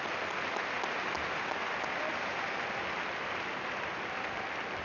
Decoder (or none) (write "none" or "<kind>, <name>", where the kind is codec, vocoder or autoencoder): none